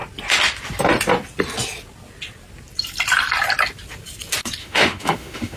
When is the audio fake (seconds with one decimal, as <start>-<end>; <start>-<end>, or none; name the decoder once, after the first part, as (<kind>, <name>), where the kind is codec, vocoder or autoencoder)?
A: 4.6-5.6 (autoencoder, DAC-VAE)